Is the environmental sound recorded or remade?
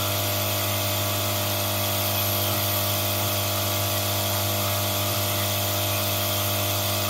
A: recorded